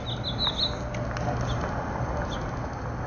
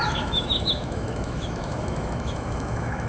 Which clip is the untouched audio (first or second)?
first